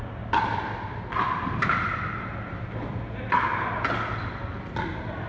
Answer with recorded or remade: recorded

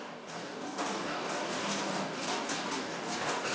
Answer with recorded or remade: remade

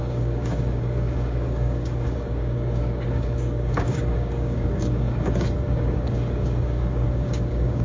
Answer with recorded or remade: remade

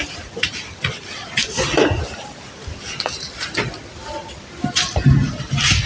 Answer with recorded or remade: recorded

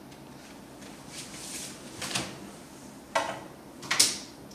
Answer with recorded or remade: recorded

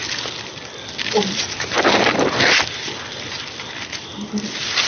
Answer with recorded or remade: recorded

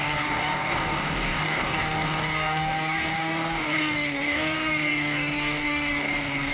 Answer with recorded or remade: remade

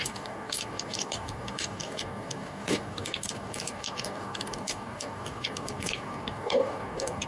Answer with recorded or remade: remade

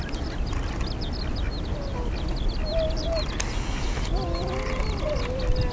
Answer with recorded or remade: recorded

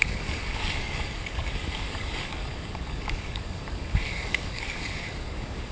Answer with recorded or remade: remade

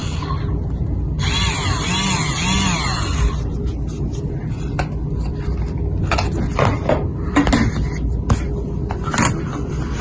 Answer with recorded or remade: recorded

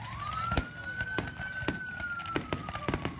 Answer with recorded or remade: recorded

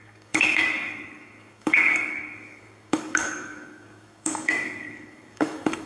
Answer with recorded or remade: remade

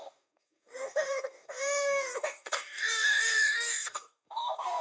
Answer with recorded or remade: remade